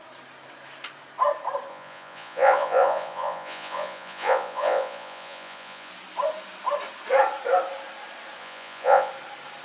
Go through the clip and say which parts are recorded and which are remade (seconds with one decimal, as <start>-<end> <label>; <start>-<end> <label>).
0.0-1.7 recorded; 1.7-5.9 remade; 5.9-8.4 recorded; 8.4-9.1 remade; 9.1-9.6 recorded